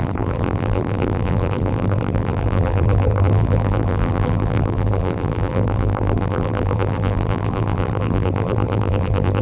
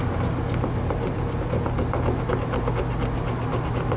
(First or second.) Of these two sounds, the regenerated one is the first